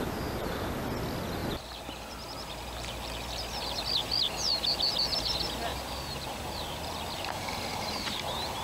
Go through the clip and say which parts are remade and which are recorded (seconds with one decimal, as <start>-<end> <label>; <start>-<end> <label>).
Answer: 0.0-5.7 recorded; 5.7-7.0 remade; 7.0-7.7 recorded; 7.7-8.6 remade